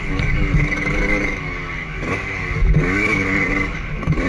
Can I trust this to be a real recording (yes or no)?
no